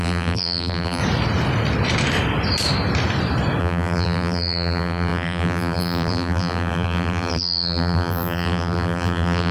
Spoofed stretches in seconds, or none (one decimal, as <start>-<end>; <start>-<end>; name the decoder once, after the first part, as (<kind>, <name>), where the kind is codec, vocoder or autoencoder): 0.0-1.0 (vocoder, BigVGAN v2); 3.6-9.5